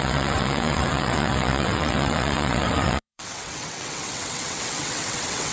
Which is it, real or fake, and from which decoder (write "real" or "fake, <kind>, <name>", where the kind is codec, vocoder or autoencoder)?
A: fake, vocoder, WaveNeXt